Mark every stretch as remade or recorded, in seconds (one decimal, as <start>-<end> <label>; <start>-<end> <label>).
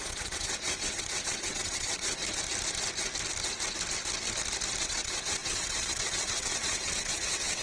0.0-2.2 remade; 2.2-4.8 recorded; 4.8-7.6 remade